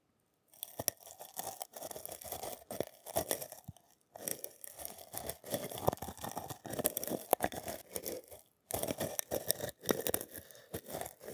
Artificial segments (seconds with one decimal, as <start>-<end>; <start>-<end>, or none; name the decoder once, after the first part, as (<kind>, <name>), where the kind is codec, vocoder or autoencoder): none